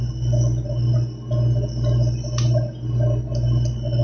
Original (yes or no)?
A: yes